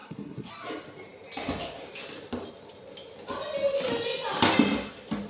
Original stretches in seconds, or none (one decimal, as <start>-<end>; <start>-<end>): 0.5-5.3